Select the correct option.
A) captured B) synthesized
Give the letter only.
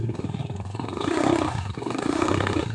B